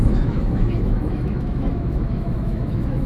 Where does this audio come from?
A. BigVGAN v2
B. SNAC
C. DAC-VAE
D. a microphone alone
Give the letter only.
C